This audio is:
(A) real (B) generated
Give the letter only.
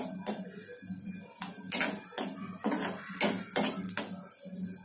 A